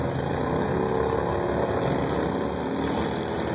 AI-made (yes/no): no